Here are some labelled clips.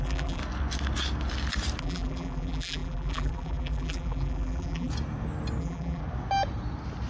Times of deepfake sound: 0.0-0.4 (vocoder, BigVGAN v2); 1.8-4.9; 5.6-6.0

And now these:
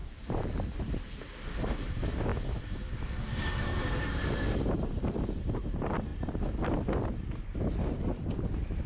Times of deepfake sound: 0.0-6.1 (vocoder, BigVGAN v2); 7.9-8.9

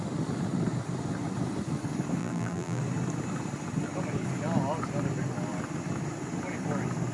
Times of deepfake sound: 2.2-2.8 (vocoder, BigVGAN v2)

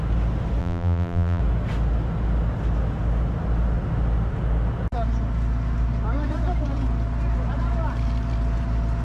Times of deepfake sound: 0.6-1.4 (vocoder, BigVGAN v2)

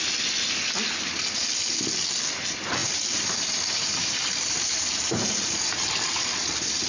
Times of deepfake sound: 2.8-6.9 (vocoder, BigVGAN v2)

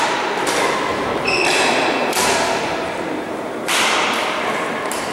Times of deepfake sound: 0.0-5.1 (vocoder, BigVGAN v2)

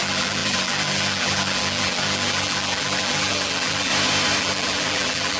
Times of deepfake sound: 0.0-3.9 (vocoder, BigVGAN v2); 4.4-5.4

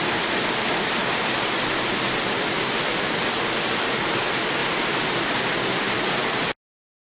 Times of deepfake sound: 4.6-6.2 (vocoder, BigVGAN v2)